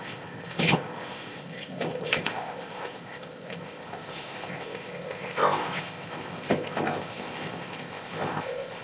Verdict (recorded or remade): remade